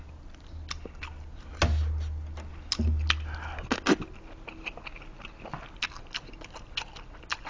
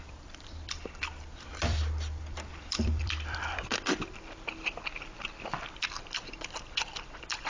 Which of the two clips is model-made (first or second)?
second